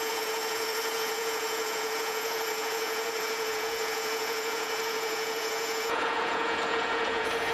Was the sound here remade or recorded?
remade